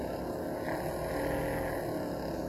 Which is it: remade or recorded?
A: recorded